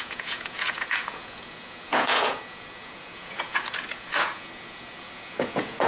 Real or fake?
fake